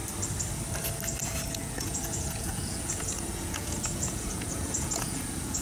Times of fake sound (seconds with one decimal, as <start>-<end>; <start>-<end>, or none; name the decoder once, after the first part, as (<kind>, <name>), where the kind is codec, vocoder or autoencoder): 1.2-5.6 (vocoder, Vocos)